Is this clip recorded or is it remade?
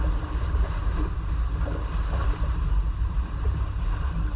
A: remade